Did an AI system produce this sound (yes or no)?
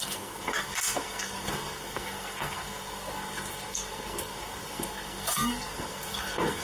yes